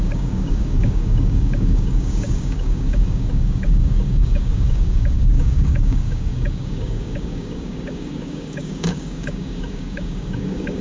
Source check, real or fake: fake